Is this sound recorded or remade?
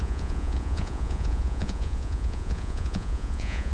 remade